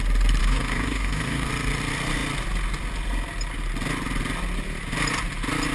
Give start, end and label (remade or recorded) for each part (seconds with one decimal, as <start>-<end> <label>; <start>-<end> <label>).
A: 0.0-0.4 recorded; 0.4-1.5 remade; 1.5-5.7 recorded